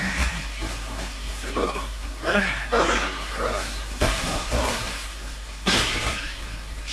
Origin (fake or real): fake